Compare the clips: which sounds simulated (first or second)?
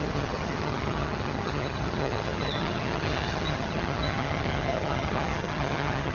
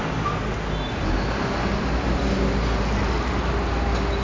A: first